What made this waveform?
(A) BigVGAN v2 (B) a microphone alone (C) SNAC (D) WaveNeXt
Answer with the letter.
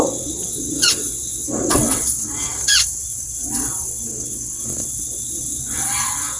D